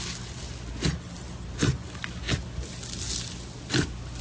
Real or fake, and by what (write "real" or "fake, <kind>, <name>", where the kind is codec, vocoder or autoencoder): real